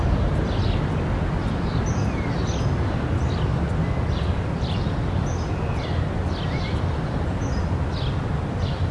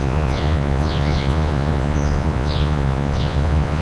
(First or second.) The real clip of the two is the first